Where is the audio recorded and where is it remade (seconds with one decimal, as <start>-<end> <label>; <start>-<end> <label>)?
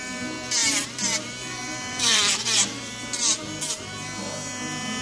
0.0-0.6 recorded; 0.6-3.6 remade; 3.6-5.0 recorded